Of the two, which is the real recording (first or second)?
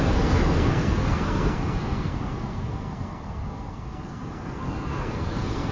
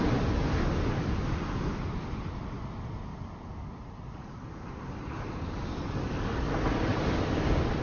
second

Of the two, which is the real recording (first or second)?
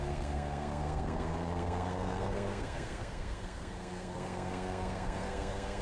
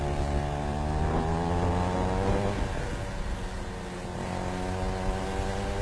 second